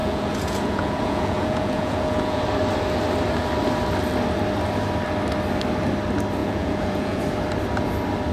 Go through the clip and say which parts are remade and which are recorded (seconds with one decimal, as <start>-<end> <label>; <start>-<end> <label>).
0.0-2.4 remade; 2.4-6.4 recorded; 6.4-7.2 remade; 7.2-8.3 recorded